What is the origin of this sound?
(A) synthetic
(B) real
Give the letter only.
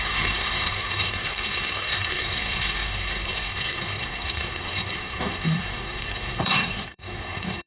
A